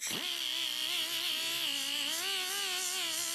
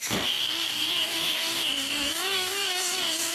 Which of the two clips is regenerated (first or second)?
second